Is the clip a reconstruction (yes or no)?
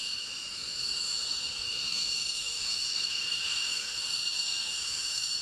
yes